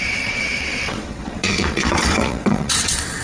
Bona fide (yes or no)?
no